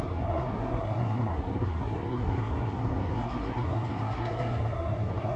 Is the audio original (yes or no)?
no